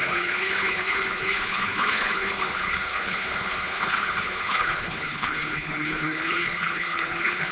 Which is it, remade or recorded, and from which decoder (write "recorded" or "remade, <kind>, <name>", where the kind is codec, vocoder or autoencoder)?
remade, codec, HILCodec